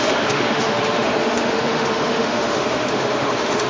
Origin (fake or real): fake